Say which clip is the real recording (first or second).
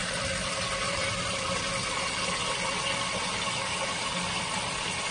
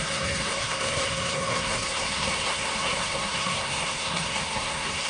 first